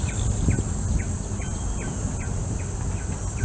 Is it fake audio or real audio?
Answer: real